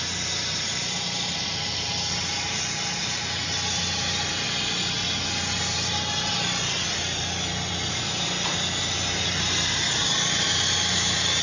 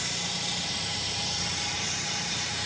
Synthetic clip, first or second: second